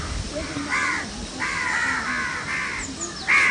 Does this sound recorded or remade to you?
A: recorded